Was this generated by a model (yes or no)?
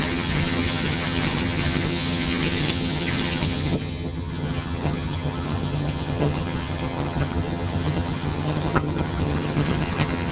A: yes